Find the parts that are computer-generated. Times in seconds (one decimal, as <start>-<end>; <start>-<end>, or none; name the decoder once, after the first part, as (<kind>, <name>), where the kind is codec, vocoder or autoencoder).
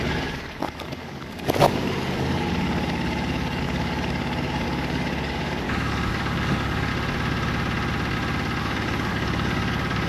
0.0-6.9 (codec, DAC); 8.6-10.1